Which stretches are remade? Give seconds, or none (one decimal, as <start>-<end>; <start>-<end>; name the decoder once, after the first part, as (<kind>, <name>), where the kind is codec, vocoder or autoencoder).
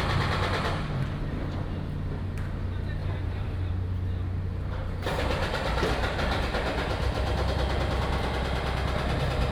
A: 3.0-3.7 (vocoder, BigVGAN v2); 4.8-6.4